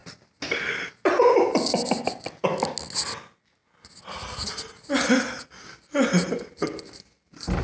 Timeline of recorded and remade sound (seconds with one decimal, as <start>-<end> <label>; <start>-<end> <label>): 0.0-7.6 recorded